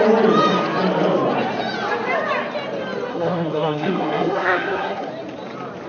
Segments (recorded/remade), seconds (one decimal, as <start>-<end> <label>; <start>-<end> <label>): 0.0-3.1 recorded; 3.1-5.1 remade; 5.1-5.9 recorded